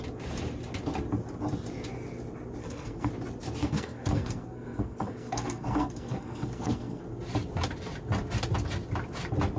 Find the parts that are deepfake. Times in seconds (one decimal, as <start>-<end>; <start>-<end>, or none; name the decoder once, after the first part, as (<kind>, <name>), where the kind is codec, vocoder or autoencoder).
2.6-3.1 (codec, SNAC); 3.6-7.0